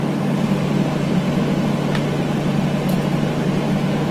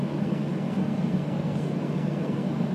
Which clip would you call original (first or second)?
first